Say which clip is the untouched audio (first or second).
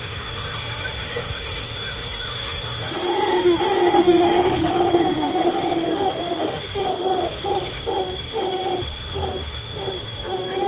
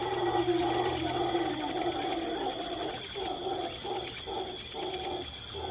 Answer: second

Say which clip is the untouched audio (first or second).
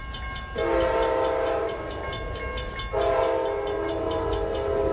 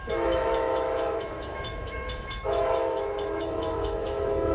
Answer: first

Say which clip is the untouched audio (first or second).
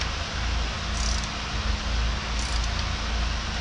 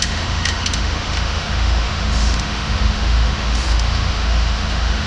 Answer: first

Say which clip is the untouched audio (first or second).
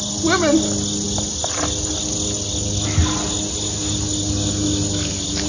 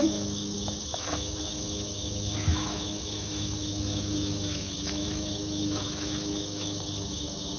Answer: first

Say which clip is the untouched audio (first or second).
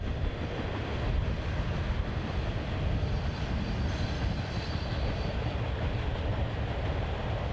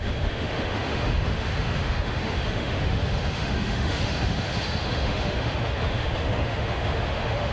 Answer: first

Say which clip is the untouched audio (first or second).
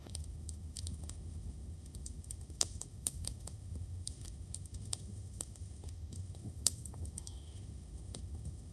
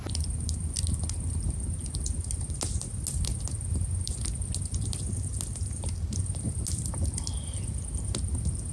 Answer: second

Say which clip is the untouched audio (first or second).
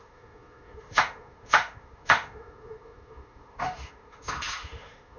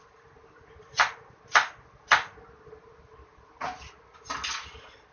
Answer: second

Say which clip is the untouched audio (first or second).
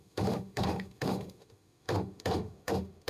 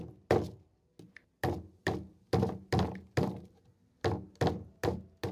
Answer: second